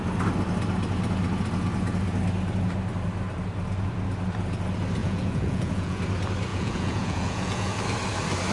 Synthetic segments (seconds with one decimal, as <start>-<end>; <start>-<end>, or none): 5.0-6.0; 6.5-7.8